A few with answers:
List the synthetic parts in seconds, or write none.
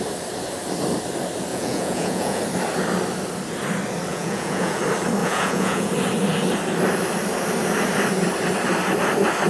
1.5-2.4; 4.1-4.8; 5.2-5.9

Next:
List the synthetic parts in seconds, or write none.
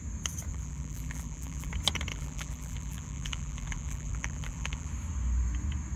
0.5-1.7; 2.1-4.9